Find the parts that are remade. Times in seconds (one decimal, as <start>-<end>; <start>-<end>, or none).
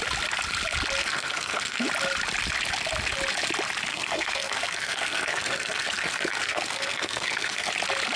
1.0-1.9; 3.9-7.7